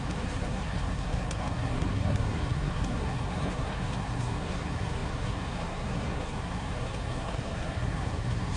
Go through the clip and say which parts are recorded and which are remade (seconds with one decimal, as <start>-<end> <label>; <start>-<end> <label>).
0.0-8.6 remade